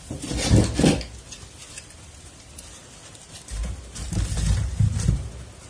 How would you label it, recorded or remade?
recorded